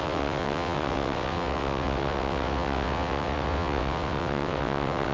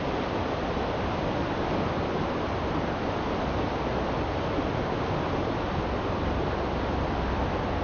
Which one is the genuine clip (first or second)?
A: second